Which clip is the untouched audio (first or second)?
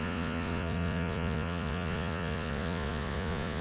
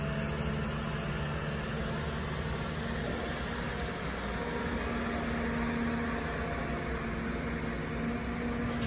second